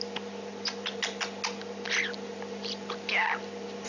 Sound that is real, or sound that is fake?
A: real